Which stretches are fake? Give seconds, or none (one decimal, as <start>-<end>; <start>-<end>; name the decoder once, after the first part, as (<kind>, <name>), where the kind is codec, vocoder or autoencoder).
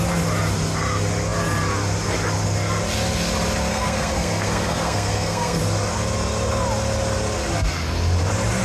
3.7-5.6 (codec, SNAC)